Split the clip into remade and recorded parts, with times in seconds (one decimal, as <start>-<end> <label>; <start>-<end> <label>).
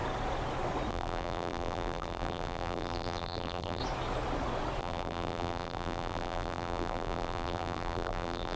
0.0-0.9 recorded; 0.9-3.8 remade; 3.8-4.8 recorded; 4.8-8.6 remade